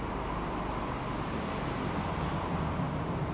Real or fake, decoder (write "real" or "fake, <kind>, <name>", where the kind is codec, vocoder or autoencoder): real